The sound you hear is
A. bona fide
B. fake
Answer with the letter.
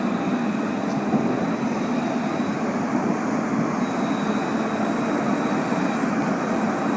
A